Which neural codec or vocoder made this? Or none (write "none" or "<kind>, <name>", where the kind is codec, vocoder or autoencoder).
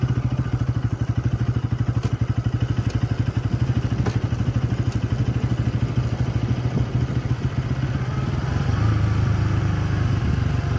none